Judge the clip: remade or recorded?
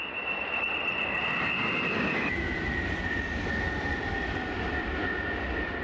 recorded